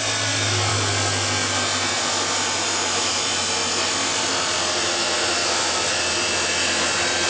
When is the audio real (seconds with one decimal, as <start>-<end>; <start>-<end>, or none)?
0.0-7.3